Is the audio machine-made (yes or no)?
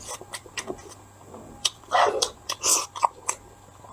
no